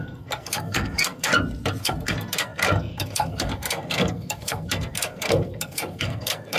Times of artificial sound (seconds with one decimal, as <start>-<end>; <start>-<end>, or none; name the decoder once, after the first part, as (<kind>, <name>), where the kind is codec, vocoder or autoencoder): 0.0-1.3 (codec, SNAC); 1.8-6.6